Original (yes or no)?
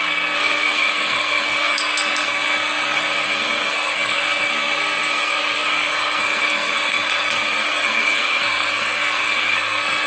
no